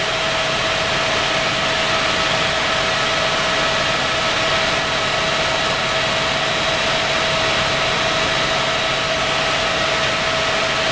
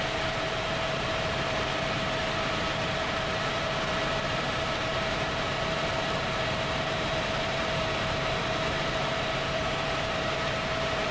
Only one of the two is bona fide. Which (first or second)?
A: first